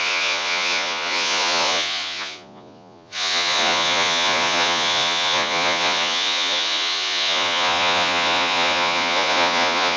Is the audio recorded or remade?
remade